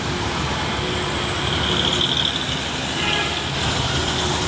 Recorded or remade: recorded